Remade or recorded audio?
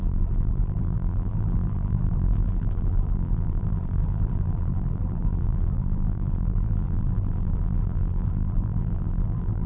remade